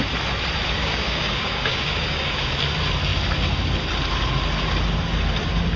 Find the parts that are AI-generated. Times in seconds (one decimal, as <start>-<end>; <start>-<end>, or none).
0.8-2.5